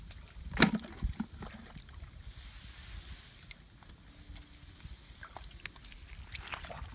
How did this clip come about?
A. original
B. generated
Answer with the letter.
A